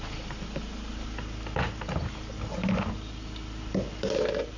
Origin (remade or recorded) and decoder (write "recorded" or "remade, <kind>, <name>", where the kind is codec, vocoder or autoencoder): recorded